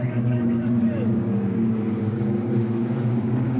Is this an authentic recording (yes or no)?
no